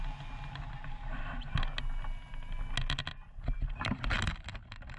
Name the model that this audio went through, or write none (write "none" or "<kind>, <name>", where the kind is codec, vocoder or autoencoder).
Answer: none